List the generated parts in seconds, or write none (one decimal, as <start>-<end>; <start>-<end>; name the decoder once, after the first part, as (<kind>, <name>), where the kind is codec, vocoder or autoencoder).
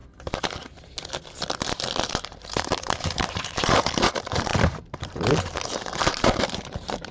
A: 2.1-7.1 (vocoder, BigVGAN v2)